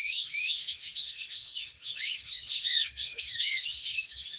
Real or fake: fake